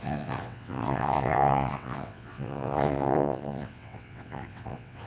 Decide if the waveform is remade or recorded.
remade